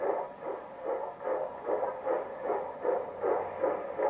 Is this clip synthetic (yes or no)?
no